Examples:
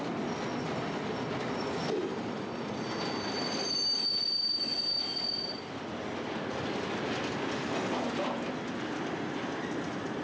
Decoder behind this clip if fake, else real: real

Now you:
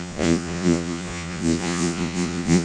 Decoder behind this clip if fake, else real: fake, vocoder, Vocos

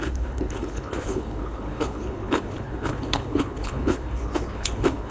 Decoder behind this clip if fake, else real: fake, codec, HILCodec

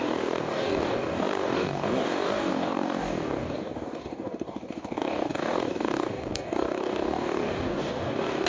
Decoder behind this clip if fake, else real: fake, codec, DAC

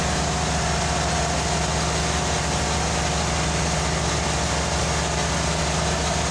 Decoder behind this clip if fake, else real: real